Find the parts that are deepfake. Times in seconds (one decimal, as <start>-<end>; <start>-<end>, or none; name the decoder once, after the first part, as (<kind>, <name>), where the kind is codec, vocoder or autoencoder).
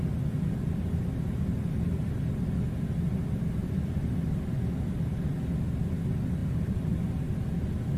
6.4-7.1 (vocoder, BigVGAN v2)